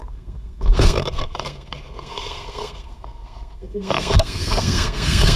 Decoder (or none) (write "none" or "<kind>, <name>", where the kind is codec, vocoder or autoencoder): codec, SNAC